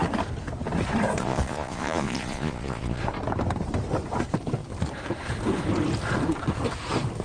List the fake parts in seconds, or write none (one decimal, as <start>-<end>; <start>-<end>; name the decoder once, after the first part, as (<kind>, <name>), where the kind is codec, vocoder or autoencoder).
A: 1.2-3.0 (vocoder, Vocos)